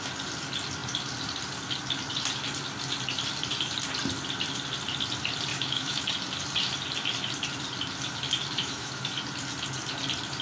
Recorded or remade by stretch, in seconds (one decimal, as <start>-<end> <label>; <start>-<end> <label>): 0.0-5.5 recorded; 5.5-6.1 remade; 6.1-8.6 recorded; 8.6-9.1 remade; 9.1-10.4 recorded